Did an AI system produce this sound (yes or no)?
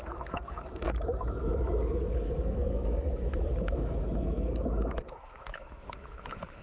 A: yes